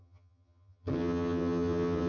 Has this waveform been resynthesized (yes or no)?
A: yes